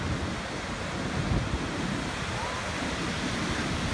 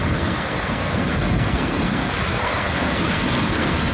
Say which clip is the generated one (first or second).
second